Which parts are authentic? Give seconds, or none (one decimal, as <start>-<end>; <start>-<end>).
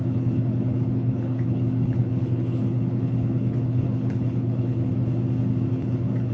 4.9-5.7